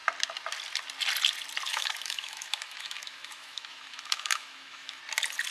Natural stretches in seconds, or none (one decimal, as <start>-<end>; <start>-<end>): 0.0-1.7; 5.0-5.5